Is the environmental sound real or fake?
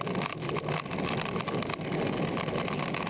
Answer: real